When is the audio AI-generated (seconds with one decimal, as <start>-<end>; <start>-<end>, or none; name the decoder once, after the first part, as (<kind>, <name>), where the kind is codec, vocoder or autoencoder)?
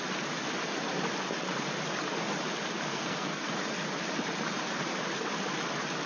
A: 2.9-3.5 (codec, SNAC)